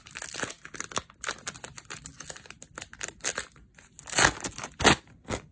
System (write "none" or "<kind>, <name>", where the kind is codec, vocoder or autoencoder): none